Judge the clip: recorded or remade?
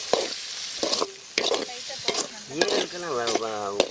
recorded